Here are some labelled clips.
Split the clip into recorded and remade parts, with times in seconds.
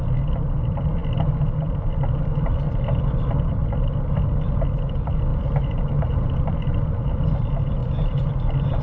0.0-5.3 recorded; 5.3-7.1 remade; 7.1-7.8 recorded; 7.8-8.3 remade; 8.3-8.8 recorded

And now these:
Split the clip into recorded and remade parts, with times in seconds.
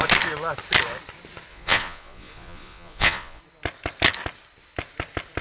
0.0-1.5 recorded; 1.5-3.4 remade; 3.4-5.4 recorded